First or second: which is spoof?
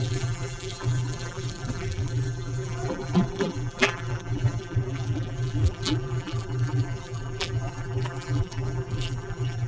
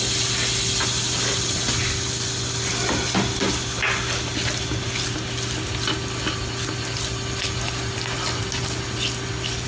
first